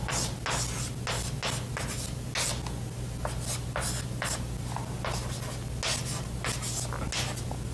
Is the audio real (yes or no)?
yes